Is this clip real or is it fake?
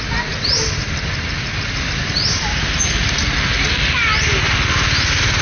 real